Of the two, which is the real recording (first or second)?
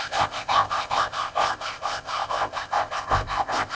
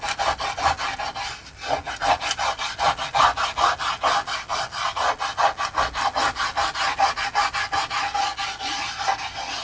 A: second